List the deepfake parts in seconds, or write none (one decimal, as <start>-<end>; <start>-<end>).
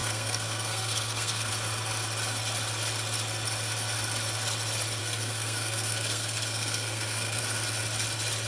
0.0-1.5; 5.0-7.4